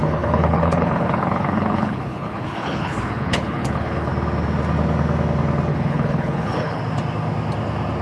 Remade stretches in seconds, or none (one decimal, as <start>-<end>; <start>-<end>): 0.0-4.1; 5.7-6.8

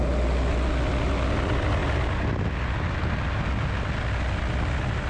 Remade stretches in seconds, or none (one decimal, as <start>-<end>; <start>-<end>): none

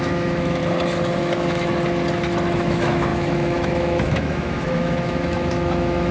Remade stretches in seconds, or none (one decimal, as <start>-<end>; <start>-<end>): 0.0-0.6; 1.2-1.7; 2.6-6.1

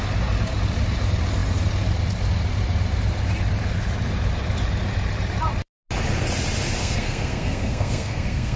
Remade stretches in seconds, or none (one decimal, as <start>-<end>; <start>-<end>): 6.8-8.6

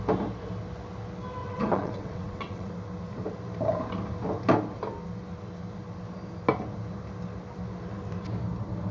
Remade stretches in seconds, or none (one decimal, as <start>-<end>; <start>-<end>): 1.4-2.7

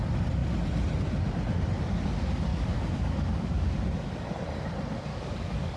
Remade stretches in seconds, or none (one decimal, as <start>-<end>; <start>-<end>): 2.5-3.8; 5.1-5.8

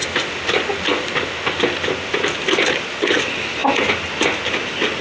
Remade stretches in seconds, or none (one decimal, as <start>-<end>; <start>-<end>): none

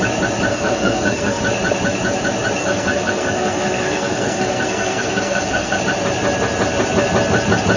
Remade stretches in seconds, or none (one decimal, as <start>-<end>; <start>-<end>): 0.5-1.4; 2.6-5.8